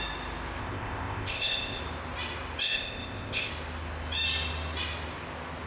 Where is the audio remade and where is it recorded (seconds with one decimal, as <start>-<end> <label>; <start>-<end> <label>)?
0.0-0.6 recorded; 0.6-1.8 remade; 1.8-2.6 recorded; 2.6-3.5 remade; 3.5-5.7 recorded